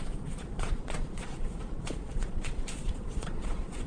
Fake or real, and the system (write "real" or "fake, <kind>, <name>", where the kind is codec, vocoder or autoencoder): fake, vocoder, Vocos